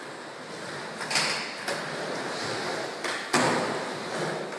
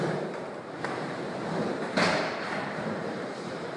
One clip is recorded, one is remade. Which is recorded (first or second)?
first